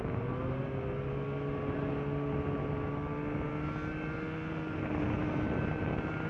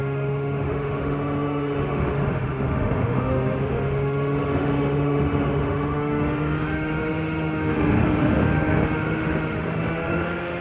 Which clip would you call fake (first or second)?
second